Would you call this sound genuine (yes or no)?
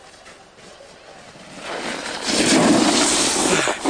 yes